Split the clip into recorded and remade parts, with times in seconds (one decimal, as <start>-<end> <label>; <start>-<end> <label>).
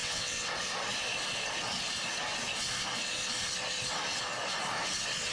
0.0-0.5 remade; 0.5-5.3 recorded